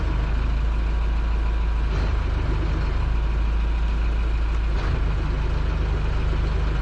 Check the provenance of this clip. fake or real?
real